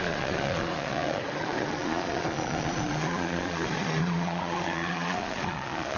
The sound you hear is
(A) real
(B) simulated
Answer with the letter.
B